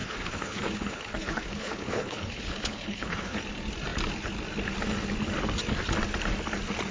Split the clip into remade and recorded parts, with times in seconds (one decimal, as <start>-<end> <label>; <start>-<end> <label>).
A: 0.0-3.4 remade; 3.4-6.9 recorded